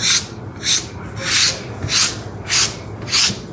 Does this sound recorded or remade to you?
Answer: recorded